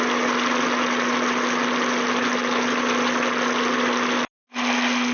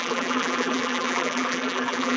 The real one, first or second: first